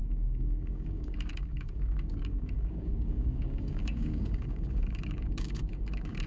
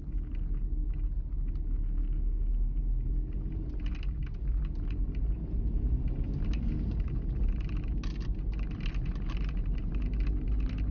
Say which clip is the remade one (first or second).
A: first